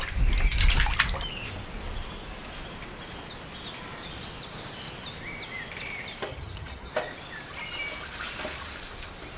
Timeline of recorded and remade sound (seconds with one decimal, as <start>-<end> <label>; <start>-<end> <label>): 0.0-6.3 recorded; 6.3-6.9 remade; 6.9-9.4 recorded